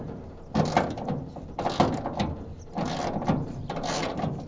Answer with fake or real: real